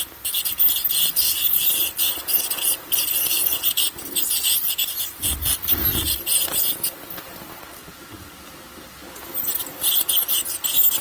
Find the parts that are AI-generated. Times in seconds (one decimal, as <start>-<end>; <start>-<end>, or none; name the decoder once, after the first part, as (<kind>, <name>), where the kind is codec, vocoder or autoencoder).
none